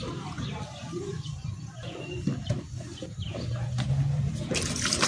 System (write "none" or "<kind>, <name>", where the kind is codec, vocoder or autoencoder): vocoder, BigVGAN v2